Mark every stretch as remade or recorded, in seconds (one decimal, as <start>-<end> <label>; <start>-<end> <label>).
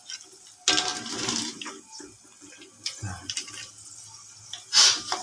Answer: 0.0-5.2 recorded